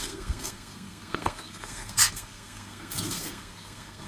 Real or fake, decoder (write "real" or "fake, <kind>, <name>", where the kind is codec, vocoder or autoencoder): fake, codec, SNAC